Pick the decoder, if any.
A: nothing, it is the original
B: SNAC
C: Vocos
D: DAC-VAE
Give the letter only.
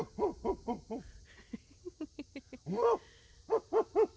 A